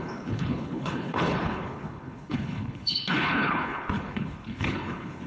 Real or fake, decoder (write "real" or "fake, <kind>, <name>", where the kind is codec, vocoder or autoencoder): fake, codec, HILCodec